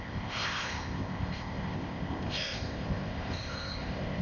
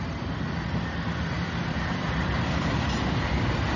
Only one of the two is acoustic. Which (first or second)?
second